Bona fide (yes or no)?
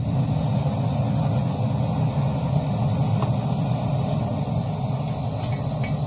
yes